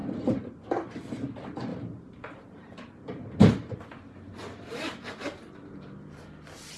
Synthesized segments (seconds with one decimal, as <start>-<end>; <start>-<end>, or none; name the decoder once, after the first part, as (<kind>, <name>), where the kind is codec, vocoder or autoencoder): 0.0-0.7 (vocoder, BigVGAN v2); 1.7-5.8